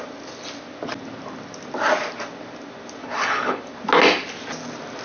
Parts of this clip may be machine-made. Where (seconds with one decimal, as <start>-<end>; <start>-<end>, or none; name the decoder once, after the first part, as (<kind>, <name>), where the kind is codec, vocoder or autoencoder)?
3.0-3.6 (codec, HILCodec)